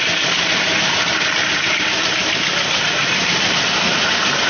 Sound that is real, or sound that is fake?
fake